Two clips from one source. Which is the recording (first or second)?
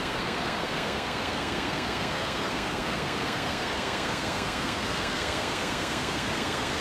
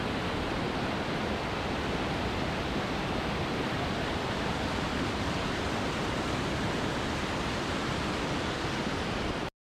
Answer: second